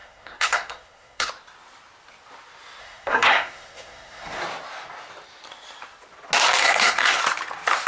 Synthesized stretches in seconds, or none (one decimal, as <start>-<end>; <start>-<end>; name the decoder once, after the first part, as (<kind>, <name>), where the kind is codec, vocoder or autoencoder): 0.0-1.3 (codec, SNAC); 2.8-4.4; 6.6-7.2